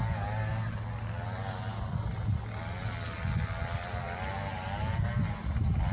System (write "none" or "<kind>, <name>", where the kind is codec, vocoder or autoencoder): none